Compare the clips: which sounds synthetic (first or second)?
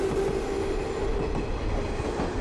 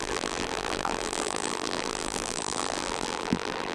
second